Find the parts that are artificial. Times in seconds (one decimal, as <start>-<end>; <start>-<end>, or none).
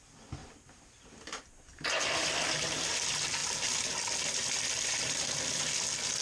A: none